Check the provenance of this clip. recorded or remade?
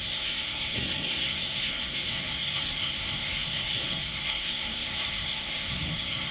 remade